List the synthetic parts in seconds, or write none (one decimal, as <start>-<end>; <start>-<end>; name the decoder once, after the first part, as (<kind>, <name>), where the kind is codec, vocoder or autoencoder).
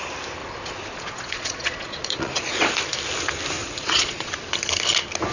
0.4-2.7 (vocoder, Vocos); 3.6-4.3